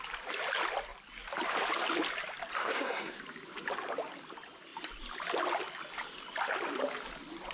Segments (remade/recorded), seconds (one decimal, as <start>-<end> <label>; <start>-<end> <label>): 0.0-2.6 recorded; 2.6-3.2 remade; 3.2-7.5 recorded